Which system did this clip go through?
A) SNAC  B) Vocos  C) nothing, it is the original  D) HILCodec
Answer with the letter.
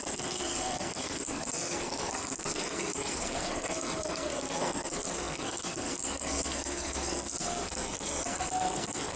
A